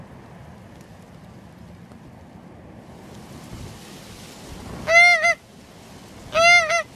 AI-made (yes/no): no